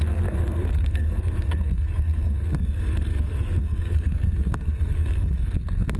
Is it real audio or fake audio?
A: fake